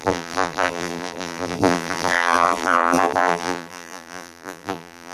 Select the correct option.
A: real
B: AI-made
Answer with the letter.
B